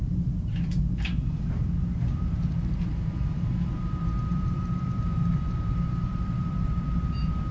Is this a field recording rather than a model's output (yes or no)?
no